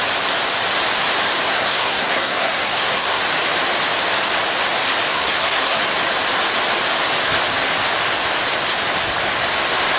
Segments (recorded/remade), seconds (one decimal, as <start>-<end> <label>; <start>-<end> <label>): 0.0-1.5 recorded; 1.5-3.2 remade; 3.2-5.1 recorded; 5.1-5.8 remade; 5.8-10.0 recorded